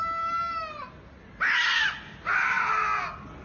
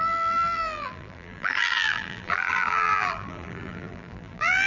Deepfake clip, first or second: second